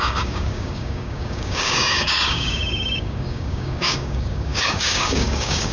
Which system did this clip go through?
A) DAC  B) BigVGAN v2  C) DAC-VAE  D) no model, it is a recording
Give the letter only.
A